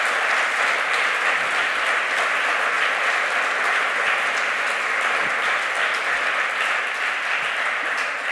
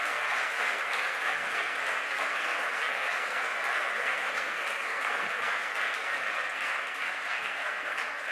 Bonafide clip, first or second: first